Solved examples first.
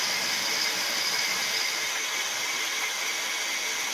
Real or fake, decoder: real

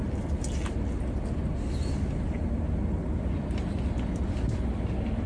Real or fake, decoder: real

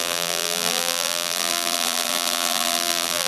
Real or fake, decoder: fake, vocoder, BigVGAN v2